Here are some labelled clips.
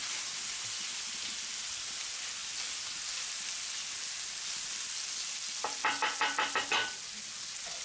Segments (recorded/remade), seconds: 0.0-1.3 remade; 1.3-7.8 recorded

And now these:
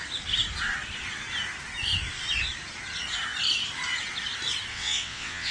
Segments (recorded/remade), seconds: 0.0-4.7 recorded; 4.7-5.5 remade

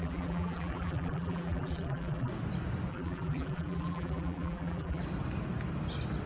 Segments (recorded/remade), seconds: 0.0-2.3 remade; 2.3-2.9 recorded; 2.9-5.0 remade; 5.0-6.3 recorded

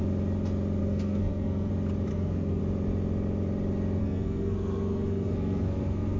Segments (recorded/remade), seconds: 0.0-0.8 recorded; 0.8-1.7 remade; 1.7-2.1 recorded; 2.1-2.6 remade; 2.6-4.0 recorded; 4.0-6.2 remade